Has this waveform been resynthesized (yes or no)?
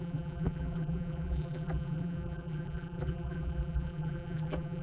yes